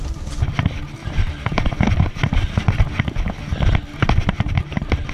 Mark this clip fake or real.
real